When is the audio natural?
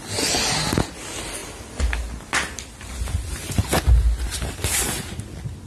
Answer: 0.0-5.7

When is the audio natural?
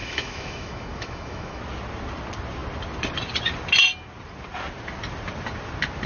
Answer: 1.6-6.1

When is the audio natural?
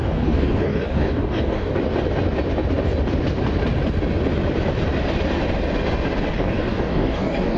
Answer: 1.7-6.3